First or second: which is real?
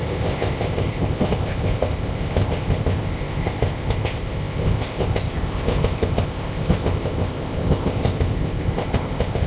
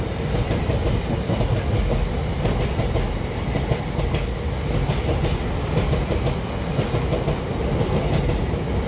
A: second